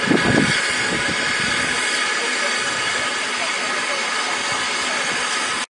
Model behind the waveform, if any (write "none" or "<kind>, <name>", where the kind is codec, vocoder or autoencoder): none